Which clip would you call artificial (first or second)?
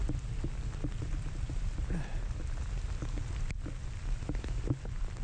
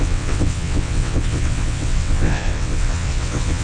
second